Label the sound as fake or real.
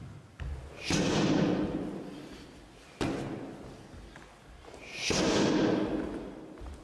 real